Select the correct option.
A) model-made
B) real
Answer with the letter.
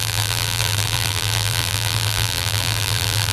A